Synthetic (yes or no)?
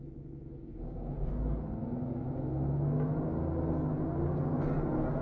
no